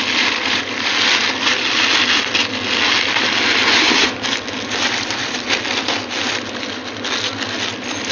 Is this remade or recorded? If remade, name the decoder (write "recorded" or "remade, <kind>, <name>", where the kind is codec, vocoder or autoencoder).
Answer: recorded